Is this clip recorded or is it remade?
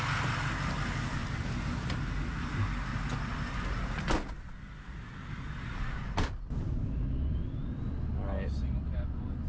recorded